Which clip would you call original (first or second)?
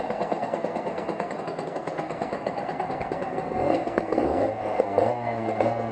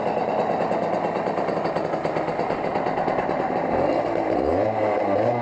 second